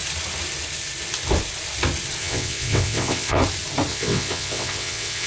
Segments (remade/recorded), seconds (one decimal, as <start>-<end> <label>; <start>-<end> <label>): 0.0-2.2 recorded; 2.2-3.4 remade; 3.4-3.9 recorded; 3.9-5.3 remade